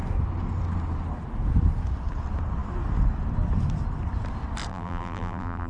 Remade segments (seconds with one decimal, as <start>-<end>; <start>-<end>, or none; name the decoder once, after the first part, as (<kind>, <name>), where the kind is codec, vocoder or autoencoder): 4.7-5.7 (vocoder, BigVGAN v2)